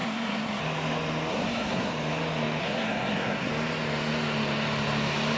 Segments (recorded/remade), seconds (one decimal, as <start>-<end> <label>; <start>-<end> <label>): 0.0-0.6 remade; 0.6-1.3 recorded; 1.3-1.9 remade; 1.9-2.6 recorded; 2.6-3.5 remade; 3.5-5.4 recorded